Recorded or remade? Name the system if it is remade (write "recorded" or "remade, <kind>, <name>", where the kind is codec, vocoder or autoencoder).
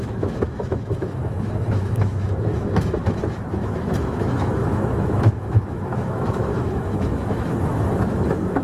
remade, autoencoder, DAC-VAE